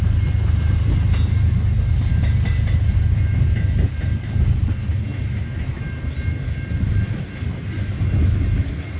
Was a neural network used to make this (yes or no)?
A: no